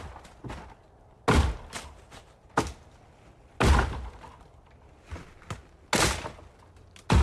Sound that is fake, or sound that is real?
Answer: real